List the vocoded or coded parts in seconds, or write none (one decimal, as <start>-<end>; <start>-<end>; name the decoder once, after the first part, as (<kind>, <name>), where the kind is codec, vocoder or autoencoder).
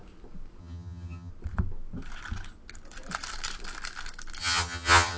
0.6-1.3 (vocoder, HiFi-GAN); 4.4-5.2